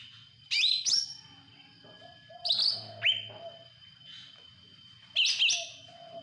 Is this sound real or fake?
real